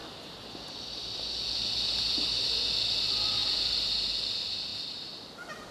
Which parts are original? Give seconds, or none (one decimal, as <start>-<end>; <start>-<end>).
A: 0.0-4.7